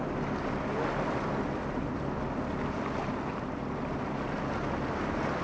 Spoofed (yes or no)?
no